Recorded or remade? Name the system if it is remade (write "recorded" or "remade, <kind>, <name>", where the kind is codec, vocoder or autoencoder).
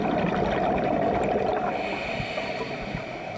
recorded